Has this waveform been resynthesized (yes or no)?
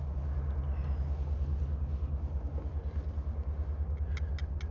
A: no